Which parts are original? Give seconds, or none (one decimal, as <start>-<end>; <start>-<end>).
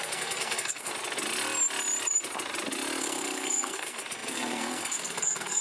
0.9-3.0